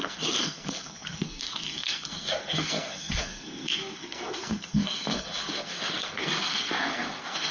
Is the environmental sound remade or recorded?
remade